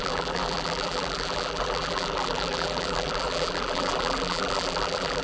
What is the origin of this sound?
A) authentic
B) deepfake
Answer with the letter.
B